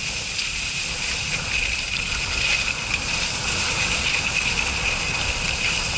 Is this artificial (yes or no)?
no